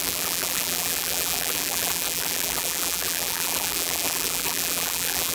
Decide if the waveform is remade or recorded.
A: remade